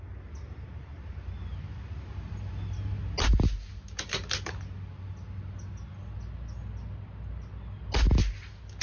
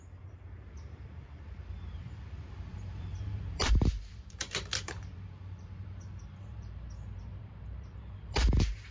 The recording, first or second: first